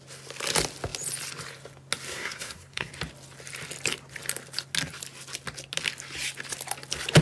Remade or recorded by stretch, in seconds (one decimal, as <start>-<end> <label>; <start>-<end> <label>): 0.0-2.1 recorded; 2.1-2.9 remade; 2.9-7.2 recorded